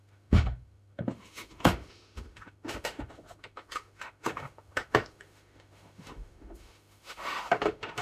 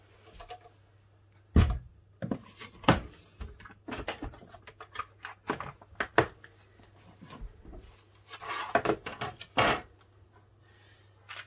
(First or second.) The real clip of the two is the second